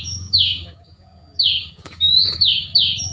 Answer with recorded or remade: remade